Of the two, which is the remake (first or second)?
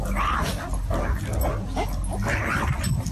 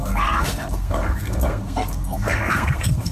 second